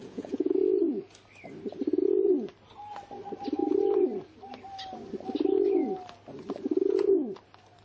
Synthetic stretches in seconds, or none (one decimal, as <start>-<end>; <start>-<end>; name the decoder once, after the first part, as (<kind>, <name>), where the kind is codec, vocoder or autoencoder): 0.0-1.0 (vocoder, Vocos)